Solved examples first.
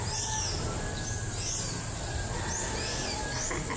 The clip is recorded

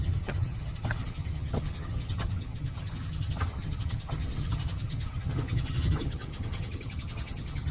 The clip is remade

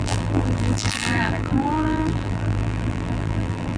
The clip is remade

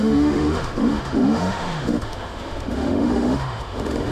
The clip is remade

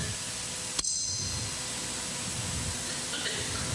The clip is recorded